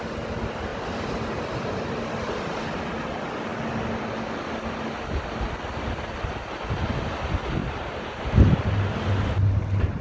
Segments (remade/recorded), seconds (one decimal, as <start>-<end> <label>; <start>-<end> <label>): 0.0-0.7 recorded; 0.7-2.0 remade; 2.0-2.5 recorded; 2.5-3.1 remade; 3.1-7.6 recorded; 7.6-8.2 remade; 8.2-10.0 recorded